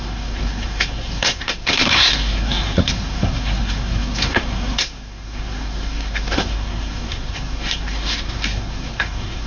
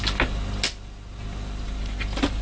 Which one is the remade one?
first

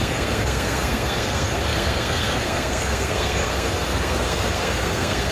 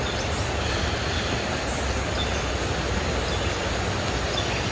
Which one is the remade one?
first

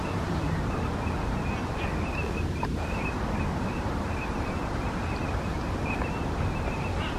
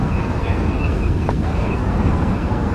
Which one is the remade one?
second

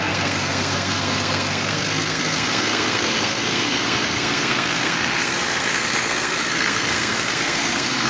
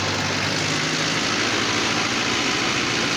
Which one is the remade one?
first